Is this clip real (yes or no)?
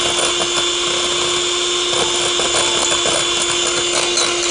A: yes